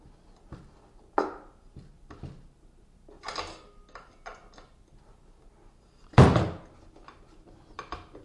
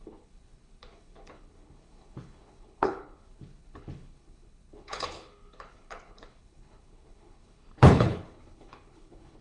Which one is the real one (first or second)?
first